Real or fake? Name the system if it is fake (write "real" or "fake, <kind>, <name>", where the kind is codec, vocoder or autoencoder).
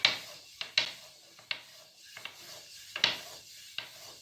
real